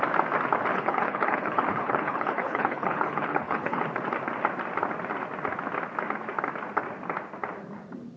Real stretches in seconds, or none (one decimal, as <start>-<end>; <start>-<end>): 0.0-0.7; 3.8-8.2